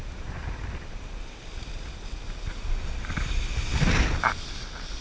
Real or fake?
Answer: real